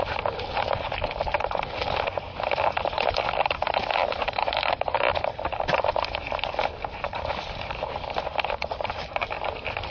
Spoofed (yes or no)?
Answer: no